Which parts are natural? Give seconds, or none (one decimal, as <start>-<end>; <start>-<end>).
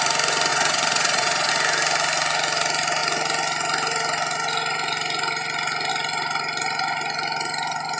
0.0-0.5; 1.5-8.0